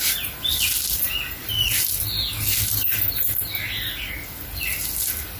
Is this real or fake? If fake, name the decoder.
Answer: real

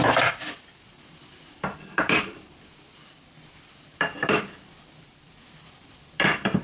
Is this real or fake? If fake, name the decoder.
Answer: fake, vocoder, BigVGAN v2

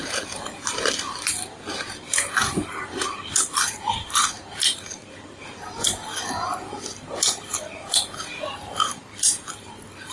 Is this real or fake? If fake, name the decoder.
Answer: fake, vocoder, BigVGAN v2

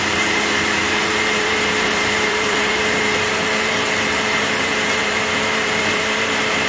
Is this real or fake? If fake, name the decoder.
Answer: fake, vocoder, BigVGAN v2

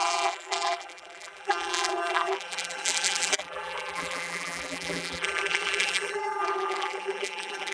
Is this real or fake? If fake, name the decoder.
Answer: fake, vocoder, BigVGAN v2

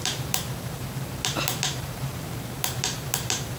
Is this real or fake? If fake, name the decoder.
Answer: fake, vocoder, BigVGAN v2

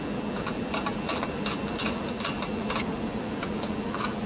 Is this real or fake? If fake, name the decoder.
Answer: fake, vocoder, BigVGAN v2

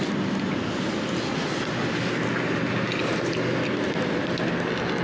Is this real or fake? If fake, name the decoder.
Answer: real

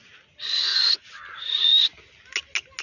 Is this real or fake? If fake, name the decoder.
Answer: real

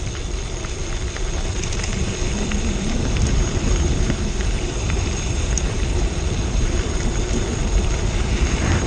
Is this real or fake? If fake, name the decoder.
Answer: fake, vocoder, BigVGAN v2